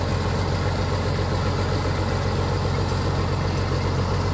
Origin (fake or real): real